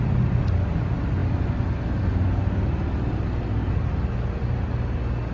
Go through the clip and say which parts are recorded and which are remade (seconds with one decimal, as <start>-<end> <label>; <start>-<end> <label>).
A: 0.0-5.3 recorded